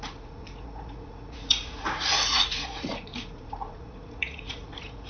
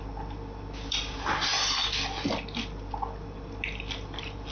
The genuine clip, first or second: second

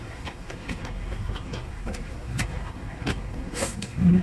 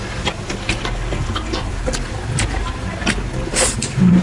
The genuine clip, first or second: second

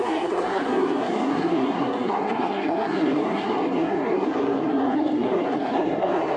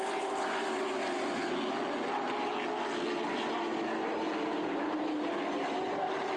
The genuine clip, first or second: second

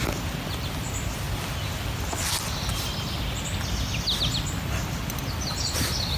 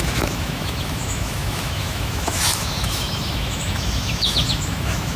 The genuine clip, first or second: first